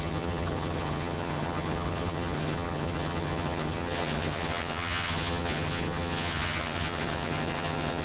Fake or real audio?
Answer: fake